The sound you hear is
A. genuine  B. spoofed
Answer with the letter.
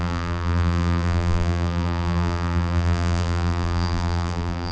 B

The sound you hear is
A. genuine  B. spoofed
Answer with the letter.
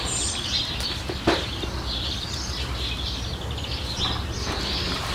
A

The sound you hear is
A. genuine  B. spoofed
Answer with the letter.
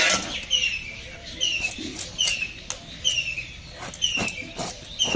A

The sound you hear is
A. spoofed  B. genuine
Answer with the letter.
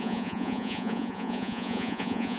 A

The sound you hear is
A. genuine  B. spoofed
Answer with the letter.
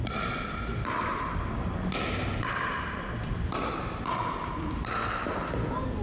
A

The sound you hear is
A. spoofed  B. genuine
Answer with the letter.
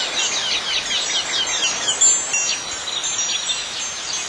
B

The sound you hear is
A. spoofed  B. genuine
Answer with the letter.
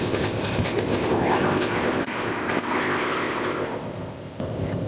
A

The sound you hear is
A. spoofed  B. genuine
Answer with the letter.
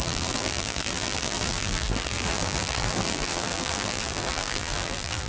A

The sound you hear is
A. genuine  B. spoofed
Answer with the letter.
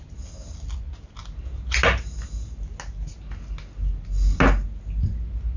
A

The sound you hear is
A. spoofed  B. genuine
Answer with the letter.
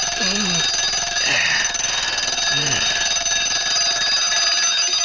B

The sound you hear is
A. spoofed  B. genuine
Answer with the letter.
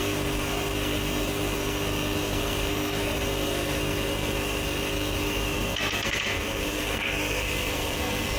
A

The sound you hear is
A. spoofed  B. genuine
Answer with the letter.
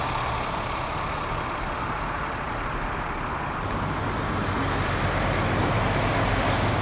B